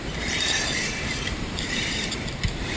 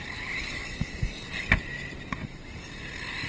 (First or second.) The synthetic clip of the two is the first